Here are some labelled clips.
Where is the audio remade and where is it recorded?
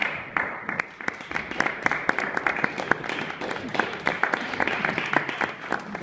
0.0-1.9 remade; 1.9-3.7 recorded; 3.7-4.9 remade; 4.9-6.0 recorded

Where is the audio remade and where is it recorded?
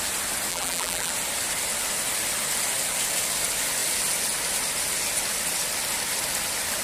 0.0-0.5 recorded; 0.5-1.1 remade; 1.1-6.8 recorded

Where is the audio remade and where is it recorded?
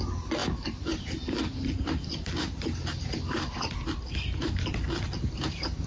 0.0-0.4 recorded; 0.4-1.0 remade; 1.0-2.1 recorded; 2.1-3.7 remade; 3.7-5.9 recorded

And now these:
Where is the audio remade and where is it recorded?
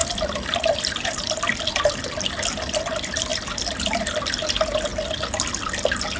0.0-3.3 remade; 3.3-4.4 recorded; 4.4-4.9 remade; 4.9-5.5 recorded; 5.5-6.2 remade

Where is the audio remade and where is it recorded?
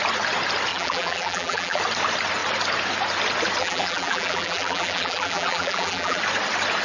0.0-0.7 recorded; 0.7-1.8 remade; 1.8-3.6 recorded; 3.6-6.2 remade; 6.2-6.8 recorded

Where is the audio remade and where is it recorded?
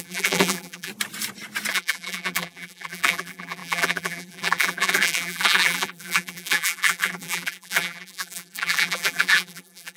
0.0-0.9 remade; 0.9-1.7 recorded; 1.7-10.0 remade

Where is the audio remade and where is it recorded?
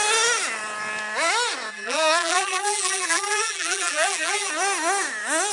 0.0-1.7 recorded; 1.7-4.5 remade; 4.5-5.5 recorded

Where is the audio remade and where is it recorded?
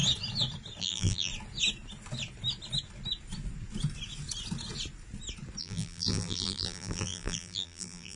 0.0-0.8 recorded; 0.8-1.3 remade; 1.3-5.6 recorded; 5.6-8.2 remade